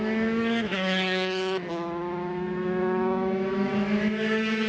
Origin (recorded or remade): remade